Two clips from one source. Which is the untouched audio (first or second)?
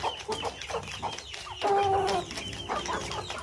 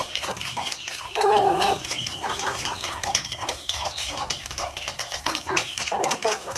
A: first